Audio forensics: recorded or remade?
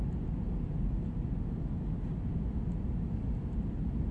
recorded